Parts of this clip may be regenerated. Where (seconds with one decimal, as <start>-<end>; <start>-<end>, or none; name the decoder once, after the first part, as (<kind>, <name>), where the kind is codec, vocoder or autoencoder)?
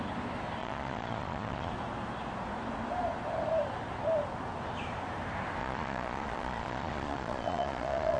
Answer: 0.6-1.7 (vocoder, Vocos); 5.6-8.2